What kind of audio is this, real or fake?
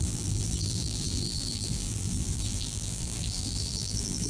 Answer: fake